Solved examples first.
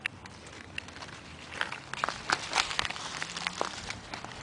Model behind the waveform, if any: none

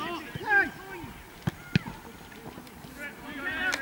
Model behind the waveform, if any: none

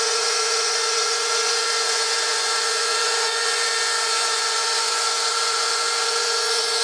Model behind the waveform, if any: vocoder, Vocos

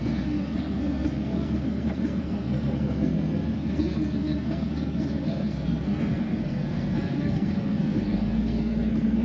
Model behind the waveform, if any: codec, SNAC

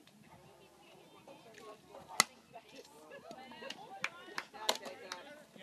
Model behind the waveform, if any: none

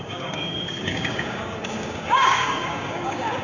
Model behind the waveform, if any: codec, DAC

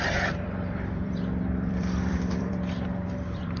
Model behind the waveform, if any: vocoder, BigVGAN v2